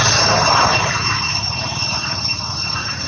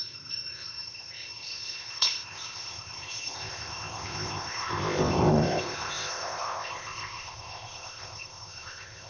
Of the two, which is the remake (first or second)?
second